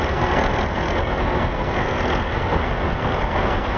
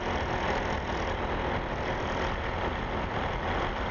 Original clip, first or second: second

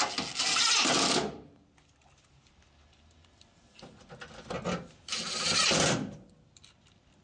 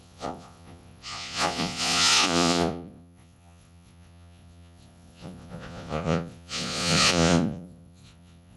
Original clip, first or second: first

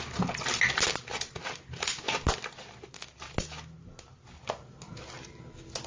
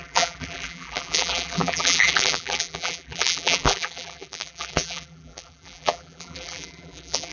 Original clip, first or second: first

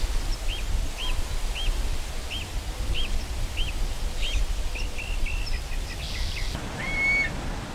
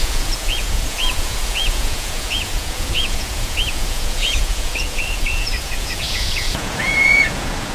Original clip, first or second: first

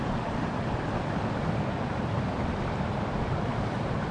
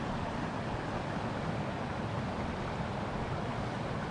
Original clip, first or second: second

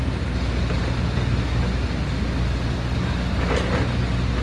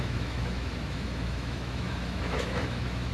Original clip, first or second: first